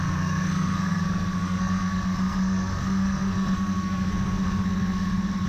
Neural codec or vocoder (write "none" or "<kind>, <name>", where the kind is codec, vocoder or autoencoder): codec, SNAC